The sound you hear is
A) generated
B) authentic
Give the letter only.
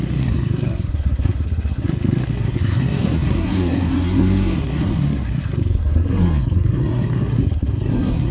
A